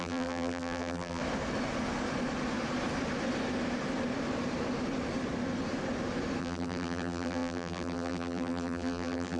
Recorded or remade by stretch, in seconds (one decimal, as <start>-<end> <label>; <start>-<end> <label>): 0.0-1.2 remade; 1.2-6.4 recorded; 6.4-9.4 remade